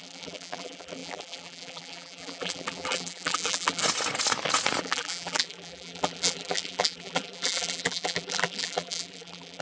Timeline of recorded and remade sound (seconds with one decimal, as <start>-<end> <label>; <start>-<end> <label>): 0.0-3.8 remade; 3.8-4.8 recorded; 4.8-9.6 remade